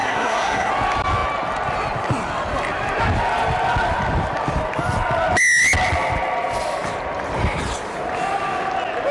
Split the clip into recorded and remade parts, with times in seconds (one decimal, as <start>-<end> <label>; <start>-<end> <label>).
0.0-0.7 remade; 0.7-9.1 recorded